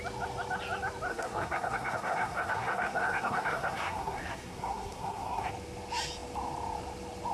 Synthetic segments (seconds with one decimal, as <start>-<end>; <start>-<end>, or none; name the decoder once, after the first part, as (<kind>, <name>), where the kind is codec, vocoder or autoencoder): 1.1-5.5 (codec, SNAC)

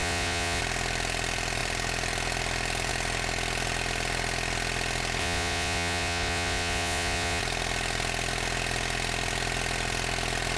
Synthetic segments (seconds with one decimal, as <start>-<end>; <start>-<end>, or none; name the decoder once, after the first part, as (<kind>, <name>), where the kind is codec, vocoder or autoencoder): 0.0-0.6 (vocoder, Vocos); 5.2-7.4

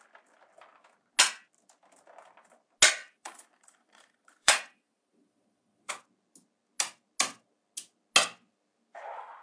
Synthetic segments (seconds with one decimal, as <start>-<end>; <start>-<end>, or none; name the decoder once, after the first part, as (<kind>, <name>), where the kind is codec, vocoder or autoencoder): 3.0-5.9 (vocoder, Vocos)